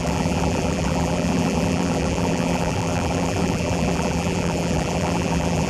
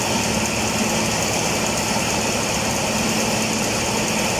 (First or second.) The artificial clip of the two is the first